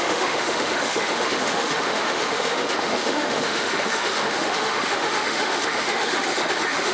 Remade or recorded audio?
remade